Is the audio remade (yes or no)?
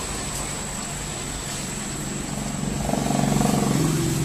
no